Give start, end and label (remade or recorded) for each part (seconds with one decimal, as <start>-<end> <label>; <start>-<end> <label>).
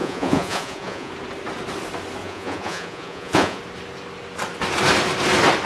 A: 0.0-1.1 remade; 1.1-2.2 recorded; 2.2-3.6 remade; 3.6-5.7 recorded